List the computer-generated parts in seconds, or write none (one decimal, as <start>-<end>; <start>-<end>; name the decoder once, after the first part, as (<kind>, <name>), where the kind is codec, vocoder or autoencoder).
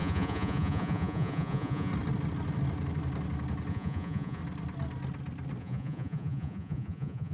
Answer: 0.0-1.9 (vocoder, Vocos); 3.7-4.4; 5.6-7.3